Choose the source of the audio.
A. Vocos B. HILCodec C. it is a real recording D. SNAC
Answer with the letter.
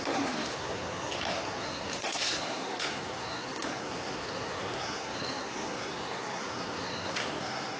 D